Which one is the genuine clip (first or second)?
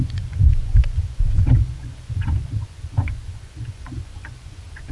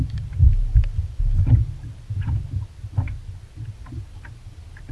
second